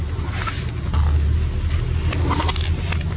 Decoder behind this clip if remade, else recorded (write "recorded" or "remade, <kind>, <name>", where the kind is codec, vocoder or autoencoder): recorded